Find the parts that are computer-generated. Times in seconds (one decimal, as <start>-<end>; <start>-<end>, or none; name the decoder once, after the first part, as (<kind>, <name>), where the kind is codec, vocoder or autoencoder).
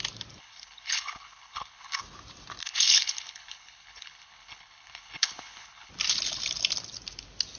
0.4-2.0 (codec, HILCodec); 2.6-5.9